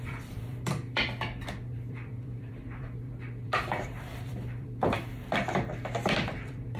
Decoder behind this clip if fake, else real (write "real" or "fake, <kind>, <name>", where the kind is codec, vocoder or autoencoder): fake, vocoder, BigVGAN v2